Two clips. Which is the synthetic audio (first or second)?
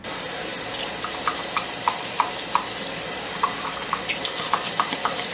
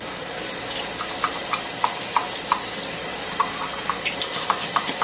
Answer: first